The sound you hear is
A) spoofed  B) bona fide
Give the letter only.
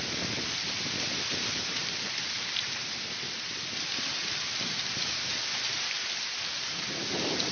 B